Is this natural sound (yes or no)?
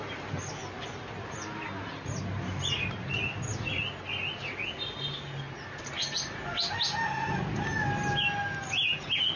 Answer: yes